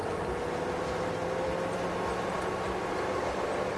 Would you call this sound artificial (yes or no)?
no